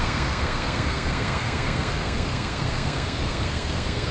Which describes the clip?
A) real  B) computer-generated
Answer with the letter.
B